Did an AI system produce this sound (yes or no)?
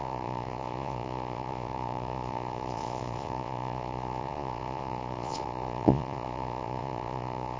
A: yes